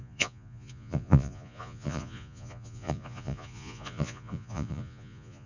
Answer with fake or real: fake